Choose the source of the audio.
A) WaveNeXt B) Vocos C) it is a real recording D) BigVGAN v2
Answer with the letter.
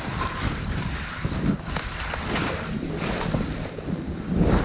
C